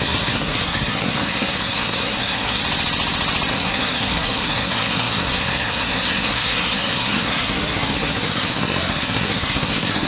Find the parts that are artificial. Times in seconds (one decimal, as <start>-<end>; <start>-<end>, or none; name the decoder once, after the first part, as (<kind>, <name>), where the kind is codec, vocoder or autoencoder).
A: 0.0-2.6 (codec, SNAC); 3.5-10.1